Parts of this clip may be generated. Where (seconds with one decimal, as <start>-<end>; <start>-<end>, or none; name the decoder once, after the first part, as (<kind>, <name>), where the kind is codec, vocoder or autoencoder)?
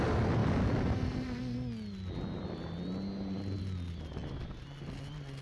none